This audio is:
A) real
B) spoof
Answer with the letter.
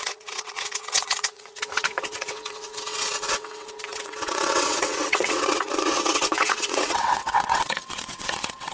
B